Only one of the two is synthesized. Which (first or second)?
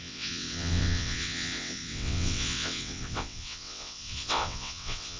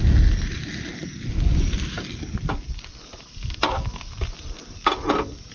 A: first